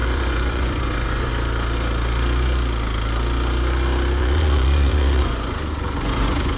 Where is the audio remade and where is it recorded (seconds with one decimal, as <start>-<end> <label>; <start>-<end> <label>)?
0.0-1.3 remade; 1.3-4.2 recorded; 4.2-6.6 remade